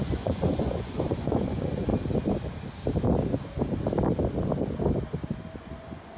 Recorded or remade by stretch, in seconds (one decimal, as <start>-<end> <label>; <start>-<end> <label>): 0.0-1.9 remade; 1.9-5.6 recorded; 5.6-6.2 remade